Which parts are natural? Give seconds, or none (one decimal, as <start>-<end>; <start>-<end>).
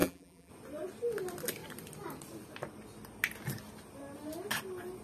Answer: 0.5-5.0